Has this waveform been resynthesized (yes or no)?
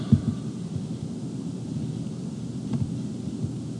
no